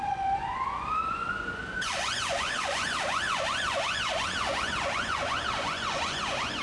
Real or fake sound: fake